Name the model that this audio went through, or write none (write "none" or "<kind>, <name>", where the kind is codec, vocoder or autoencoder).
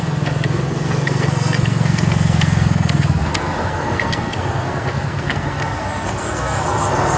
codec, SNAC